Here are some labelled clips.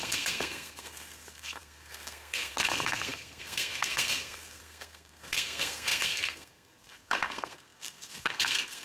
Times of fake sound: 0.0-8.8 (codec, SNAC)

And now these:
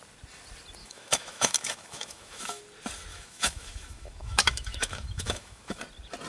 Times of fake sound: 0.8-2.6 (autoencoder, DAC-VAE); 3.1-5.8

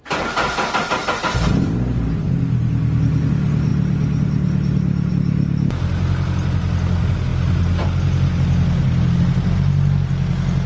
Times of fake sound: none

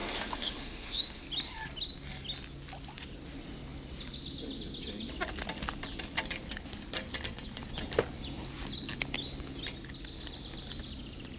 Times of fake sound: 0.0-1.2 (autoencoder, DAC-VAE)

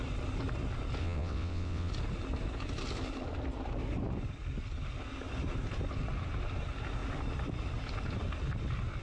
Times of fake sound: 1.0-1.9 (vocoder, WaveNeXt)

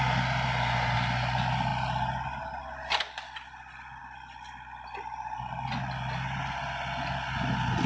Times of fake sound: none

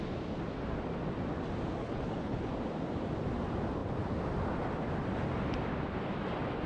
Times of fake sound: 1.8-2.5 (codec, HILCodec)